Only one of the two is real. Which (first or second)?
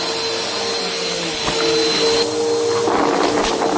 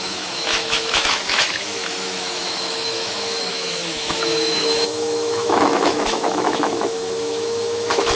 first